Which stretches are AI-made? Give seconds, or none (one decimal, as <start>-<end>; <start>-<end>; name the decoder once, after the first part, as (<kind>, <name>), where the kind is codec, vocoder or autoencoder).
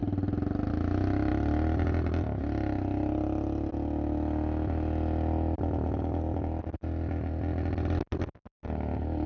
none